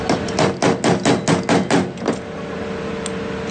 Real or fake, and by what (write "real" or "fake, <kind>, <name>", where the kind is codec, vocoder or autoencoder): real